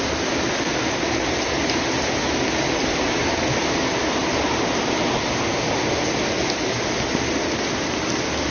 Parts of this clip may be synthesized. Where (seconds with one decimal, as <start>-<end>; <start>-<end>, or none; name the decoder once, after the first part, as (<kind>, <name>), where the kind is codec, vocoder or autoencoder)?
none